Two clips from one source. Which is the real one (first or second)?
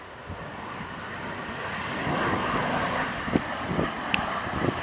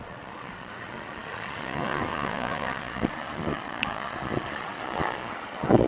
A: first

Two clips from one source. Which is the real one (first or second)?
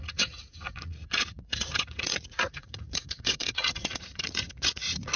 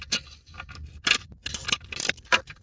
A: second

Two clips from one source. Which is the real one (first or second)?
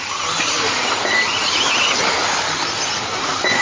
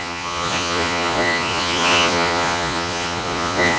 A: first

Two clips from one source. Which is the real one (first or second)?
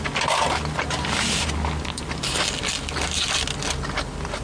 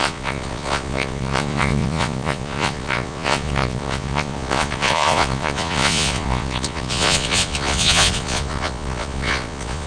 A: first